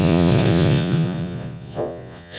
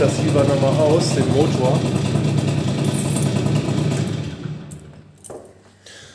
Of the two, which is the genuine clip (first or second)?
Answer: second